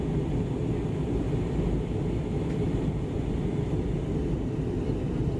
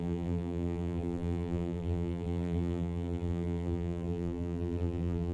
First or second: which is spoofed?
second